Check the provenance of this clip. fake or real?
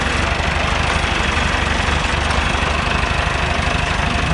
real